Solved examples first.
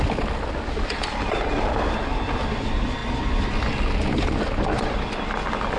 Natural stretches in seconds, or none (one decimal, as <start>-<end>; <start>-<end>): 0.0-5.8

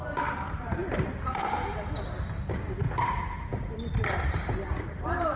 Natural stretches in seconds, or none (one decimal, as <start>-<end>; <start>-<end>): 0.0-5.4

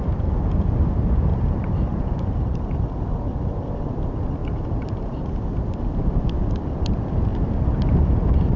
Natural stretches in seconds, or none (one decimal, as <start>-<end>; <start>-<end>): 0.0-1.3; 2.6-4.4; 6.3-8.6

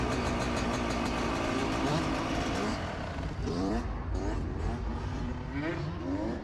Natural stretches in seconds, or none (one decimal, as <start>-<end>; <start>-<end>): 0.0-1.6; 3.7-6.4

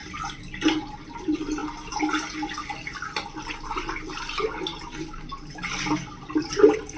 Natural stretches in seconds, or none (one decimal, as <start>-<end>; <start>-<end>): 0.0-7.0

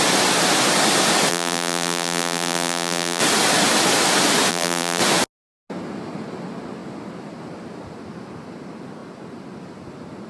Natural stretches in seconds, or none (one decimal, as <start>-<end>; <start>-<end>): 0.0-1.3; 3.2-4.5; 5.0-10.3

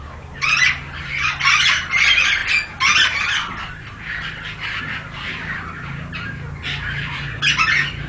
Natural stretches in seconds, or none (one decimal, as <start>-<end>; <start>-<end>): 0.0-8.1

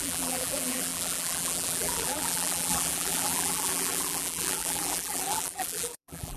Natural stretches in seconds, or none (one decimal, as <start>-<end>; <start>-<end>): none